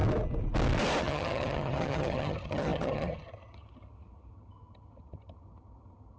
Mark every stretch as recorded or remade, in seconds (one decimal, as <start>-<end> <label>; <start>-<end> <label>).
0.0-1.0 recorded; 1.0-6.2 remade